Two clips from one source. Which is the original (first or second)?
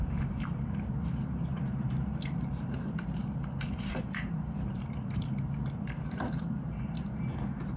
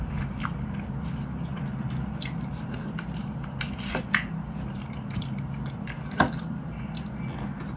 second